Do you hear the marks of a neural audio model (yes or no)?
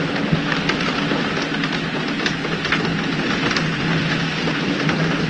no